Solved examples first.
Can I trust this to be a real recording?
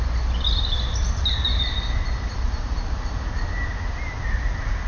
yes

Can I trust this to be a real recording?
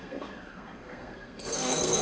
no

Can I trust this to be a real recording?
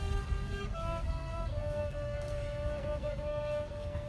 no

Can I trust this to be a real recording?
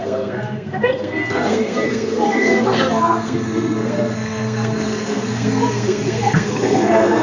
no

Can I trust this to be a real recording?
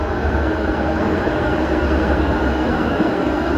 no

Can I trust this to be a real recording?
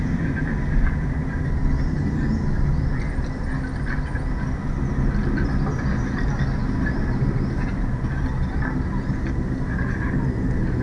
yes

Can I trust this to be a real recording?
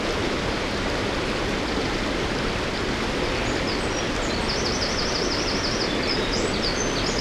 yes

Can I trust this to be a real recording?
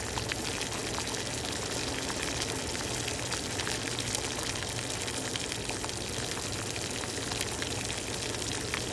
yes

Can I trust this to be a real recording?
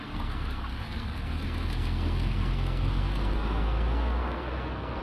no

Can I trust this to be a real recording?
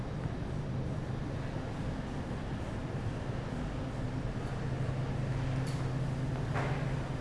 yes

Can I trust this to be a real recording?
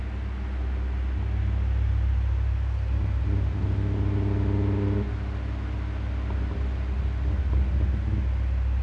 yes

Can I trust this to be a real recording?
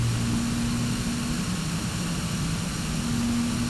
yes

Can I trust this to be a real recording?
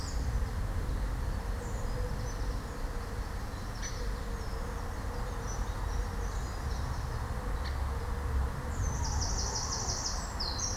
yes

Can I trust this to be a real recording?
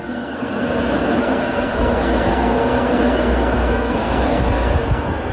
no